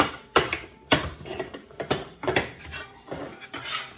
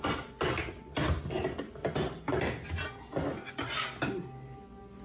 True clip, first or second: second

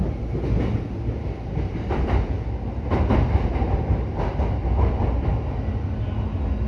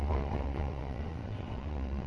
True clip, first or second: first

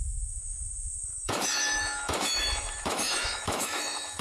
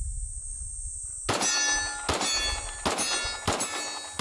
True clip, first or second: second